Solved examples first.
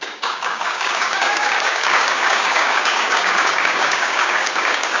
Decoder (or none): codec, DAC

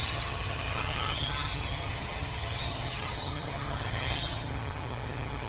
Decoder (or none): vocoder, HiFi-GAN